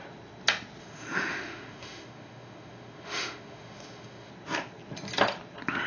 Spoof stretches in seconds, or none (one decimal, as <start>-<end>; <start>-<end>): 0.8-4.3